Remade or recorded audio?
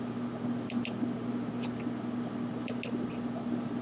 recorded